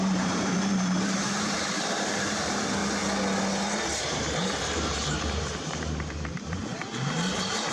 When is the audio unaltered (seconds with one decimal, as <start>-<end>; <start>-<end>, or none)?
2.8-4.0; 6.6-7.1